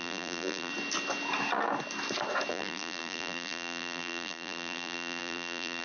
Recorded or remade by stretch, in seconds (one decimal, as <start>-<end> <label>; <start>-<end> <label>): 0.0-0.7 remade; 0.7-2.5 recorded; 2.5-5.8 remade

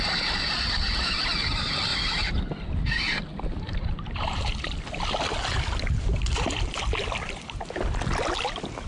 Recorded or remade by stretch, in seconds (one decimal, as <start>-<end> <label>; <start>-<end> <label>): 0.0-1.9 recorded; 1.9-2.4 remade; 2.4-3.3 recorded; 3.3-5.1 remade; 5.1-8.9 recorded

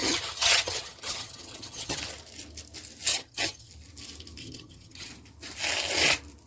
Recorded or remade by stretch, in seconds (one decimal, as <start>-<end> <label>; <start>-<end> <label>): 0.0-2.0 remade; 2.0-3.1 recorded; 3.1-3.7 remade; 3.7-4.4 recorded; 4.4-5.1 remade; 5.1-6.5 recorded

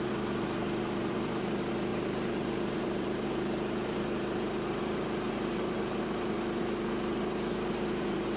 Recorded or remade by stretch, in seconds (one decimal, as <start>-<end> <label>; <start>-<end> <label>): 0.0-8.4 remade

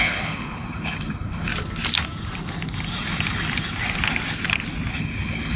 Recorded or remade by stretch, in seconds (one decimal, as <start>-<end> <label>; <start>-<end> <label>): 0.0-1.5 remade; 1.5-4.9 recorded; 4.9-5.6 remade